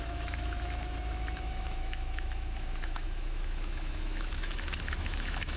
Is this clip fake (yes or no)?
yes